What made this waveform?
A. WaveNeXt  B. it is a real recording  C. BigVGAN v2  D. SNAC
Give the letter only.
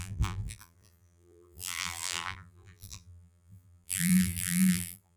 C